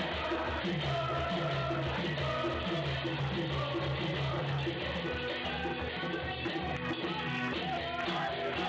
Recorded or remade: recorded